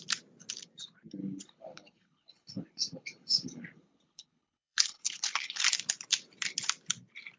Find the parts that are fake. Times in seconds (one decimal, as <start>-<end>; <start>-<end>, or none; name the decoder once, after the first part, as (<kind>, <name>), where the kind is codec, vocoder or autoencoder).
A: 1.2-5.6 (codec, HILCodec)